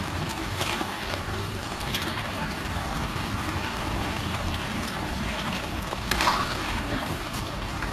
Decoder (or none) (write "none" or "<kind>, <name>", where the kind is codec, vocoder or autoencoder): codec, DAC